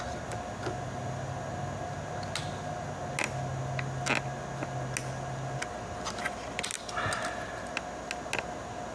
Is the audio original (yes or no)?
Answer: yes